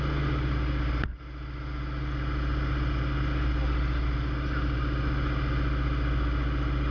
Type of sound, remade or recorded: recorded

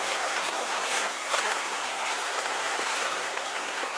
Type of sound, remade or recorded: remade